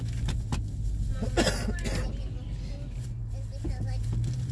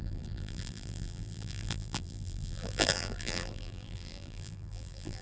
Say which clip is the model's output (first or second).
second